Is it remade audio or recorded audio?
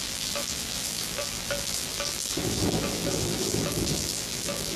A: remade